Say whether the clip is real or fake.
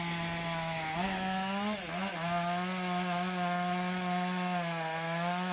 real